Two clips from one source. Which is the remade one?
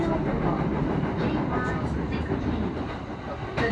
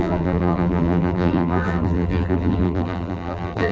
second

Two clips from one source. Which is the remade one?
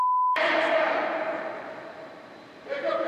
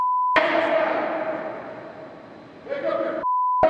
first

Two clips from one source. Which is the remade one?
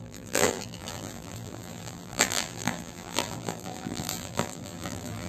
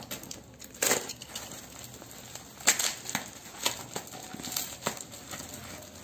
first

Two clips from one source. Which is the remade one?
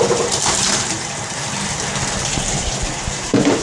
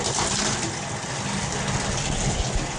first